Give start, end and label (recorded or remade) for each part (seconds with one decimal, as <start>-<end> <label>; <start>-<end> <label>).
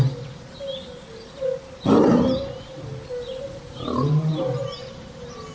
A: 0.0-5.5 recorded